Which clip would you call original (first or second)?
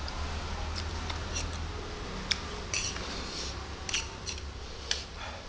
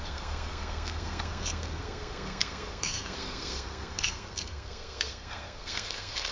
first